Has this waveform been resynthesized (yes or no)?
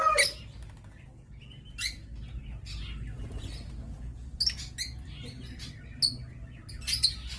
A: no